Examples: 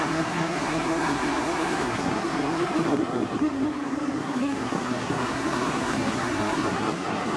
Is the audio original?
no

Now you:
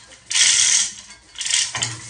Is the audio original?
yes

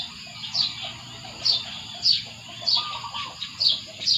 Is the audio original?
yes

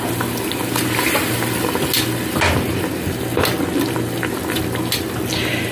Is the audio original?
yes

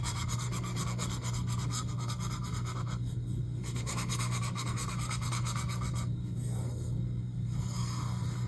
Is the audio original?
no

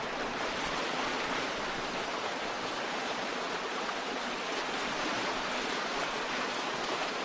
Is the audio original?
no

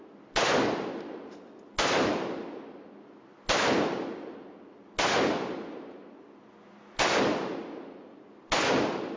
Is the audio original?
yes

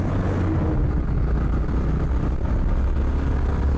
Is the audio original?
yes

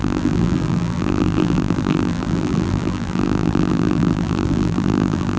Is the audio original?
no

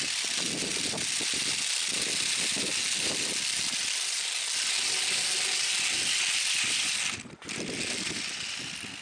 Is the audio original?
yes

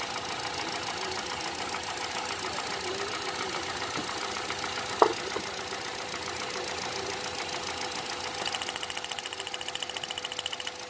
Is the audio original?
yes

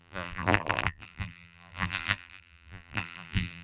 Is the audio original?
no